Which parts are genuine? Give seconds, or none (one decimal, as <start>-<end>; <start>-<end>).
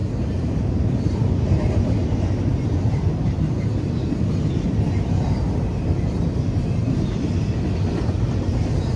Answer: 1.4-2.0; 2.5-9.0